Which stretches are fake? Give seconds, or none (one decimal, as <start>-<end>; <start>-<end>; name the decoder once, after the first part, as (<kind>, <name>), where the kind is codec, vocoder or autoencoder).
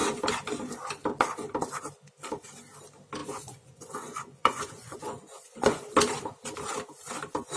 3.2-5.9 (vocoder, Vocos)